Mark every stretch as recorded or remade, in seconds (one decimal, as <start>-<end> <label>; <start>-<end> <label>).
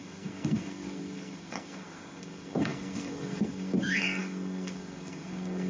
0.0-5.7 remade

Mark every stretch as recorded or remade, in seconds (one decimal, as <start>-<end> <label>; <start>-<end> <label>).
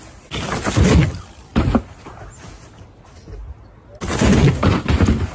0.0-5.3 recorded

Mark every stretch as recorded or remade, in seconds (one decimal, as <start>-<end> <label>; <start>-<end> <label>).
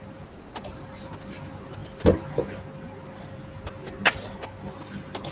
0.0-5.3 recorded